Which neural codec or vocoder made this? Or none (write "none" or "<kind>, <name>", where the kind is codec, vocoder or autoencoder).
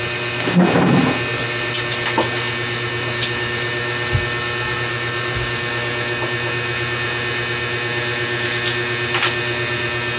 none